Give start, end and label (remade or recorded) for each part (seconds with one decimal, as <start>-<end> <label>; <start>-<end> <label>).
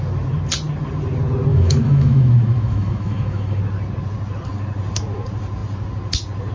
0.0-1.5 recorded; 1.5-3.6 remade; 3.6-6.5 recorded